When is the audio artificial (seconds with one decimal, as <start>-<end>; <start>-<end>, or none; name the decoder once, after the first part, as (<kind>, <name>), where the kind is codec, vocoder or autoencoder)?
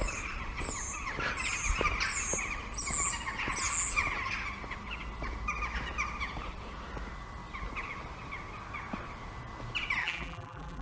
10.0-10.8 (vocoder, BigVGAN v2)